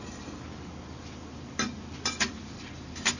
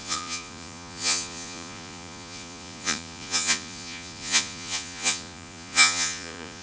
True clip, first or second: first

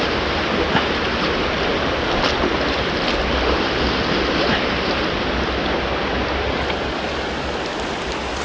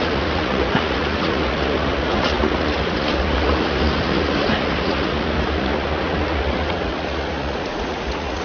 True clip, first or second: first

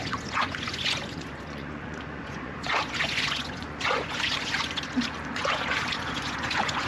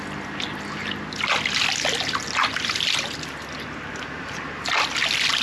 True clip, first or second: second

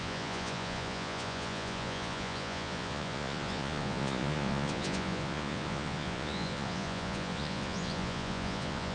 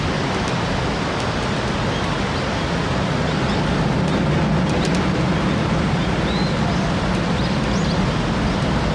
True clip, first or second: second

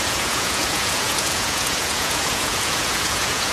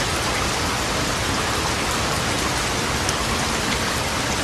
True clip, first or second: second